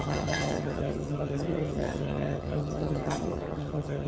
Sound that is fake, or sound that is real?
fake